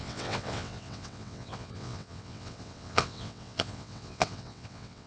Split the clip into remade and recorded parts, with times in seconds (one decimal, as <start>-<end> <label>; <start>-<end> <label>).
0.0-5.1 remade